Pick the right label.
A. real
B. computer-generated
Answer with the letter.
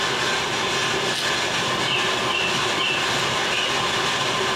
A